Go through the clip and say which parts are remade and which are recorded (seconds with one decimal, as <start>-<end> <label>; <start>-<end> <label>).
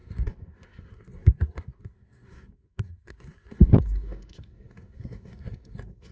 0.0-6.1 remade